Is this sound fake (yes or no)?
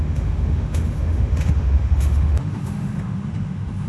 yes